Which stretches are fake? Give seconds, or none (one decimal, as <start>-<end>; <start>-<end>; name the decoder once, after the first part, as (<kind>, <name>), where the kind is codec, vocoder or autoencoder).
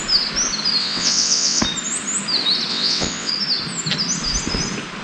0.8-1.6 (vocoder, WaveNeXt); 2.7-3.3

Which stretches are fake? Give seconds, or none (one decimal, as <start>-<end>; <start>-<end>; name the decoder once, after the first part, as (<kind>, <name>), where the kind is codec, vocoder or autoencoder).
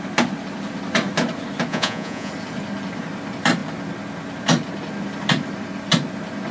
1.7-2.3 (vocoder, Vocos)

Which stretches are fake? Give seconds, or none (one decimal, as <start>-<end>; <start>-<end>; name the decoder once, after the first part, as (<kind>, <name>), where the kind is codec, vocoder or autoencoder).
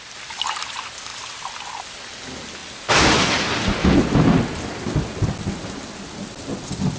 none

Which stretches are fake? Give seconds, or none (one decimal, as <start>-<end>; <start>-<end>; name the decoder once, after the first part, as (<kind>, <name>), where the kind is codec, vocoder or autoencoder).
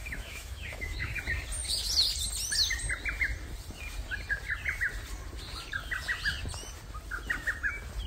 0.0-1.2 (autoencoder, DAC-VAE)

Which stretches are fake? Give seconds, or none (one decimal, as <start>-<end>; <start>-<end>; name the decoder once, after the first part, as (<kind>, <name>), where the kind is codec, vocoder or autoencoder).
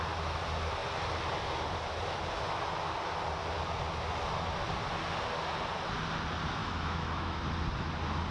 6.6-7.4 (autoencoder, DAC-VAE)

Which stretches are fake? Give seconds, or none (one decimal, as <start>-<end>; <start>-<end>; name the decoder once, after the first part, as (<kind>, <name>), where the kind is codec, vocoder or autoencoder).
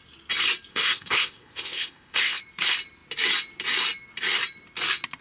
0.7-2.4 (codec, ZipCodec)